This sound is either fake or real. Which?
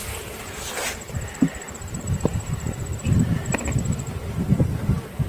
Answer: fake